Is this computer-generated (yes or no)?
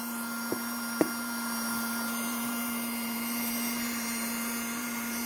yes